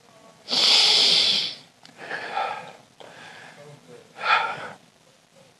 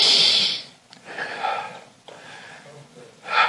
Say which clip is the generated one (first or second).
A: second